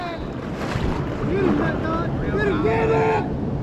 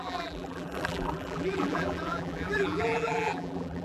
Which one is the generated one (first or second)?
second